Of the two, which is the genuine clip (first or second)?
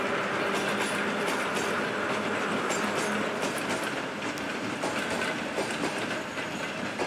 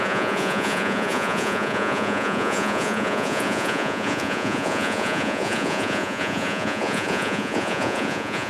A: first